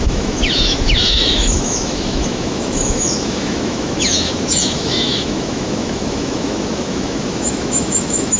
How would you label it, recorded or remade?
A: remade